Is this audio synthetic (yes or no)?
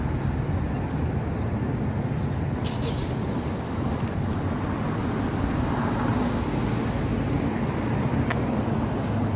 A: no